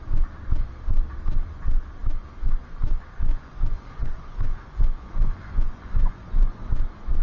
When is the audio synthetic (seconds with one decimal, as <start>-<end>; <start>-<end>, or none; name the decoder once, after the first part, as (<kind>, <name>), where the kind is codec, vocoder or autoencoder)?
3.3-6.7 (vocoder, Vocos)